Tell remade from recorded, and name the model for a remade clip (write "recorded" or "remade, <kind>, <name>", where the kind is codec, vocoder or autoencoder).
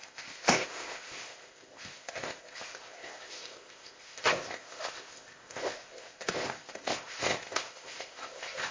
remade, codec, ZipCodec